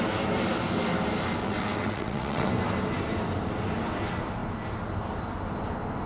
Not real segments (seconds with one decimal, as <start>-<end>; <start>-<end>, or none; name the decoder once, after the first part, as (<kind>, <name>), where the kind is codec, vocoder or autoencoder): 1.4-2.5 (vocoder, WaveNeXt)